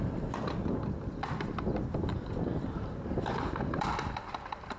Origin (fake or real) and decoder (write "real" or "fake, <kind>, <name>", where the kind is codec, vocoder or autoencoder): fake, vocoder, BigVGAN v2